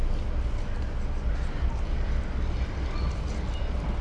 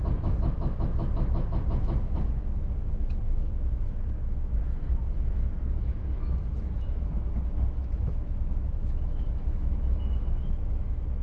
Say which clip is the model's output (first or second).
second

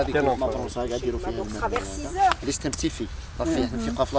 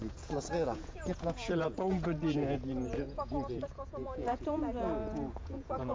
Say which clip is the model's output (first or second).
second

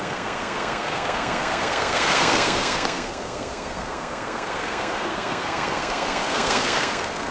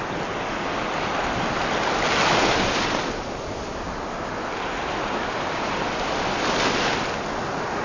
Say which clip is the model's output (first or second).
first